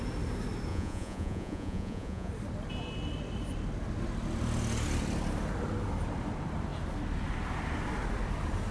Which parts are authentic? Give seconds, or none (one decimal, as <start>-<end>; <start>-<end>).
0.0-0.7; 2.3-8.7